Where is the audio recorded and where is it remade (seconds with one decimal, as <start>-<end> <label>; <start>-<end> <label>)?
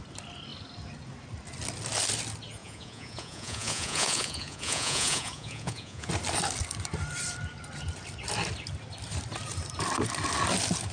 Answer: 0.0-2.6 recorded; 2.6-6.1 remade; 6.1-10.9 recorded